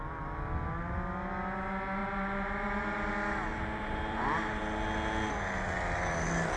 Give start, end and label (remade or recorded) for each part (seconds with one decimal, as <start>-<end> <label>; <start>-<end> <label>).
0.0-2.0 recorded; 2.0-3.1 remade; 3.1-3.5 recorded; 3.5-4.6 remade; 4.6-6.6 recorded